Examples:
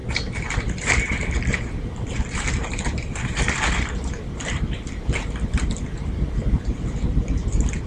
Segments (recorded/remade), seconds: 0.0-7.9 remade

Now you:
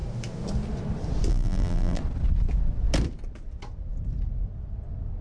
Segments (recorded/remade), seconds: 0.0-1.3 recorded; 1.3-2.0 remade; 2.0-5.2 recorded

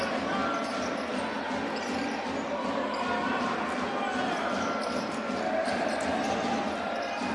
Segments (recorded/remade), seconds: 0.0-7.3 recorded

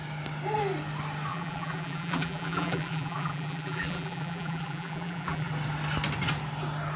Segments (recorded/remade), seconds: 0.0-1.3 recorded; 1.3-5.5 remade; 5.5-7.0 recorded

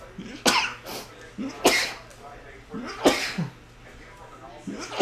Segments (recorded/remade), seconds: 0.0-5.0 recorded

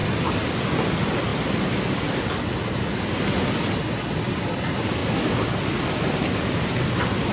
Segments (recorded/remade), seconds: 0.0-0.6 recorded; 0.6-1.3 remade; 1.3-3.4 recorded; 3.4-5.0 remade; 5.0-6.5 recorded; 6.5-7.3 remade

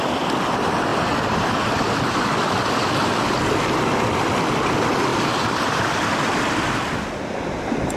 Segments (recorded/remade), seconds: 0.0-0.9 recorded; 0.9-2.6 remade; 2.6-5.1 recorded; 5.1-6.9 remade; 6.9-8.0 recorded